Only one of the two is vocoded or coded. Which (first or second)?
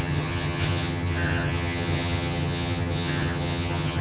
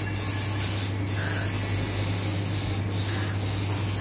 first